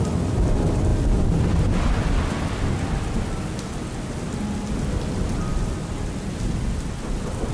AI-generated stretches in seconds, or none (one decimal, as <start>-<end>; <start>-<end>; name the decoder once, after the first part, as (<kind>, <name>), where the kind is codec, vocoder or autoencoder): none